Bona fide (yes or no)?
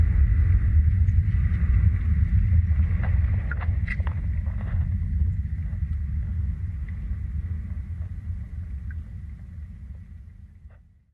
yes